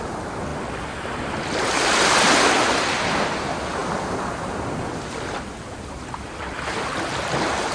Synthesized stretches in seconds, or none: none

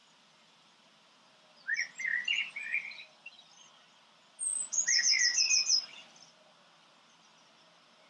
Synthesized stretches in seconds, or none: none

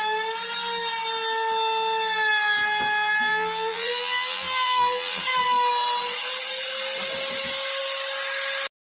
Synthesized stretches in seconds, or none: 3.3-5.2 (vocoder, BigVGAN v2)

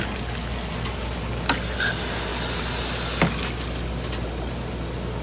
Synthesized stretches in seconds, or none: none

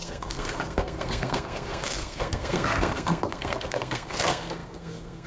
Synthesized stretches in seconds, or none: 0.0-5.3 (codec, SNAC)

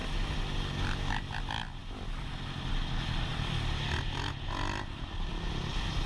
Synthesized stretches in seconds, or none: none

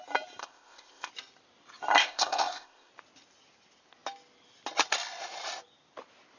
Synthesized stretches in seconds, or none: 0.4-1.1 (codec, ZipCodec); 2.0-2.9